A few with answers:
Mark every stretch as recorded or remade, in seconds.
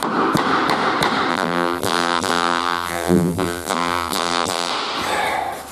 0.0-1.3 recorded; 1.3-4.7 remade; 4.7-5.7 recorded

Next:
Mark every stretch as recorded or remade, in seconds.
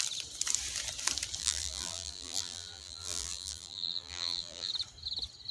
0.0-1.4 recorded; 1.4-4.7 remade; 4.7-5.5 recorded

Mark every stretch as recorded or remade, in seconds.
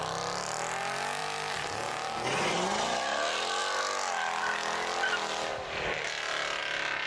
0.0-1.2 recorded; 1.2-1.7 remade; 1.7-5.5 recorded; 5.5-6.6 remade; 6.6-7.1 recorded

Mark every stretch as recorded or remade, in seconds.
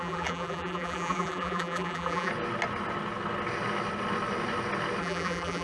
0.0-2.3 remade; 2.3-5.0 recorded; 5.0-5.6 remade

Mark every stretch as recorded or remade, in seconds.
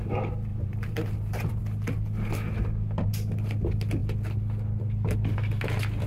0.0-0.5 recorded; 0.5-1.6 remade; 1.6-6.1 recorded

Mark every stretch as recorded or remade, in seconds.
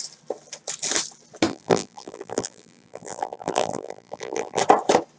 0.0-1.5 recorded; 1.5-4.6 remade; 4.6-5.2 recorded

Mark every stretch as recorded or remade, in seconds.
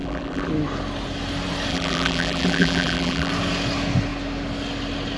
0.0-0.5 remade; 0.5-1.7 recorded; 1.7-3.3 remade; 3.3-5.2 recorded